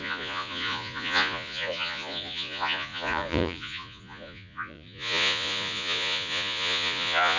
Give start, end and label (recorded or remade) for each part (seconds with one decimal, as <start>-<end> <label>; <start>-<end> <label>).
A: 0.0-7.4 remade